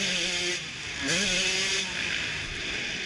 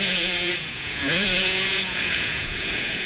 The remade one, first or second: second